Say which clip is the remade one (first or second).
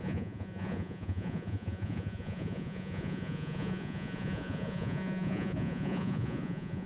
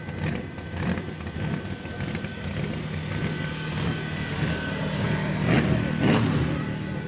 first